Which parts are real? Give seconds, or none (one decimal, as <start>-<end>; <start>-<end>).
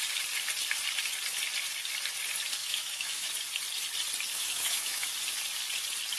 0.0-2.6; 3.3-4.3; 5.1-6.2